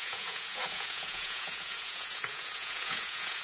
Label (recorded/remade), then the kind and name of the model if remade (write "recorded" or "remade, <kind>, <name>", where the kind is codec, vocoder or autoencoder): remade, vocoder, Vocos